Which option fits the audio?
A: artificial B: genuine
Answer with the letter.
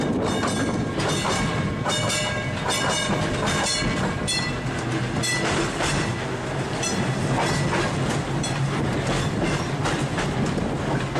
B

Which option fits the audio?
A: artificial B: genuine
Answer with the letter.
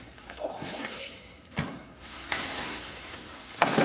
A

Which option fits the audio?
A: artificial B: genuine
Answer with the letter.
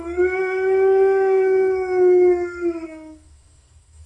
A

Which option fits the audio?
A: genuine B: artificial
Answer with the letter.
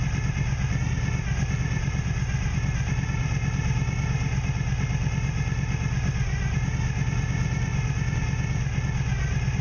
A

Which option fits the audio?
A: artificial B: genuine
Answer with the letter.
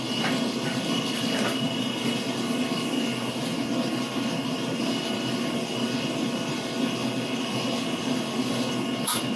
B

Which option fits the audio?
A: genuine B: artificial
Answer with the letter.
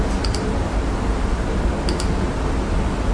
A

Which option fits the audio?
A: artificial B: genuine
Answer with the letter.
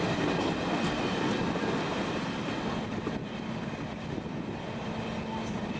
B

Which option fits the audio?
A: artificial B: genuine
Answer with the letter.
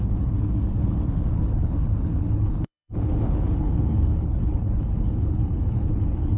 A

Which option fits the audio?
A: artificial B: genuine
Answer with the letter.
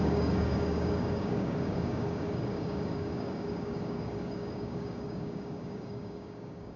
A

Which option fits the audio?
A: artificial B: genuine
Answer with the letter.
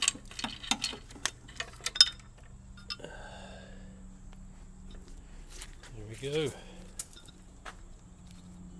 B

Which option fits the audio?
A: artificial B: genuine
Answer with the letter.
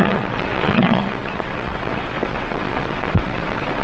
A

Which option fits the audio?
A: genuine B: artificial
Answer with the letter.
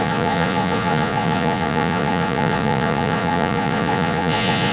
B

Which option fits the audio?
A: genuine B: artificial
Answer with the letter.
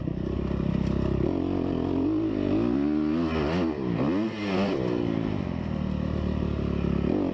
A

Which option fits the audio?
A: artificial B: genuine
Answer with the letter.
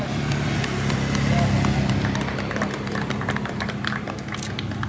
B